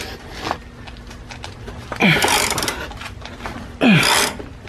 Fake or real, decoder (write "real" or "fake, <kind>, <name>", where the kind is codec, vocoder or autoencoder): real